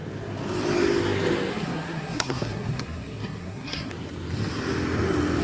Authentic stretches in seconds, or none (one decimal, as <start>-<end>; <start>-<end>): 0.0-1.5; 3.9-5.4